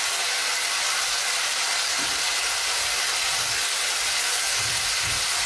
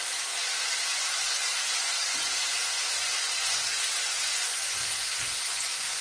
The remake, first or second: second